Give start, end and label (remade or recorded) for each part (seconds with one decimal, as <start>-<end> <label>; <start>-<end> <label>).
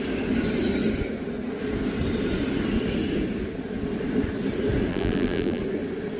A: 0.0-4.9 recorded; 4.9-5.6 remade; 5.6-6.2 recorded